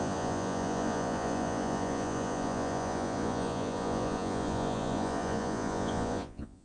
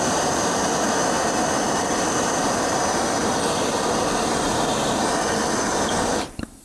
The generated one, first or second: first